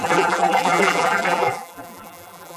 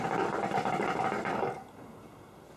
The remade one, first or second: first